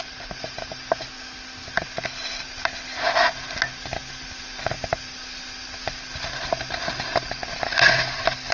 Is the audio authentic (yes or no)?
yes